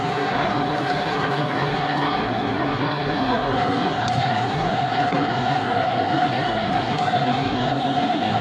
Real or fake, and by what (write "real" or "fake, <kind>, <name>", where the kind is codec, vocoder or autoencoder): fake, codec, SNAC